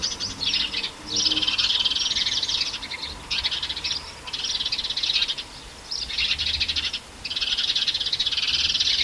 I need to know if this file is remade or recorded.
recorded